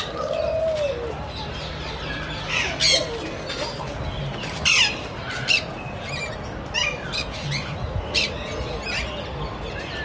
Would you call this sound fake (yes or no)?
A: no